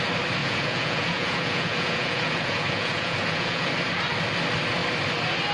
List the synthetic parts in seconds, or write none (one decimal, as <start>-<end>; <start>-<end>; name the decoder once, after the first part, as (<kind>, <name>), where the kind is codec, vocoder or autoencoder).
0.4-3.7 (vocoder, Vocos)